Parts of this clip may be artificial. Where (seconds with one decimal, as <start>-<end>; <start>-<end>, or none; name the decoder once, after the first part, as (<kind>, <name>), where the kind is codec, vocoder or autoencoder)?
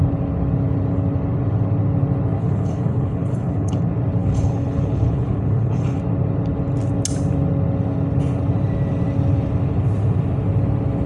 2.4-3.8 (codec, HILCodec); 4.2-6.0